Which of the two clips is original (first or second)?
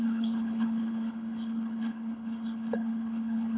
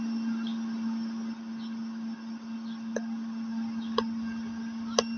second